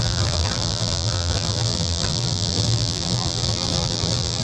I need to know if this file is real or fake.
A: fake